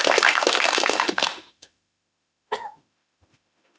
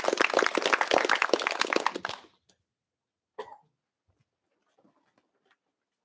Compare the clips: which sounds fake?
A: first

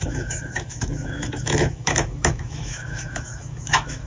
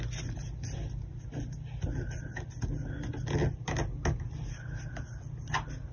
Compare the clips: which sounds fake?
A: first